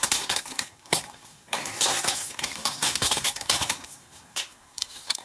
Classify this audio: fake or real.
fake